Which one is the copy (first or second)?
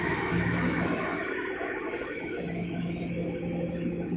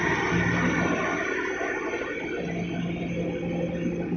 first